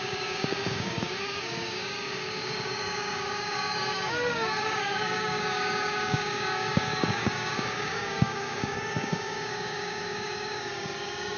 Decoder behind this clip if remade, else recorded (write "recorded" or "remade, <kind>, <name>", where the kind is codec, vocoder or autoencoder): remade, codec, DAC